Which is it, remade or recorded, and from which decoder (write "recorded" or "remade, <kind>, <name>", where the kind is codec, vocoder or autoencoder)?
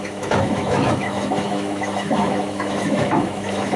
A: remade, autoencoder, DAC-VAE